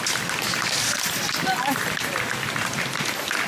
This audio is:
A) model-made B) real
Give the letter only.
B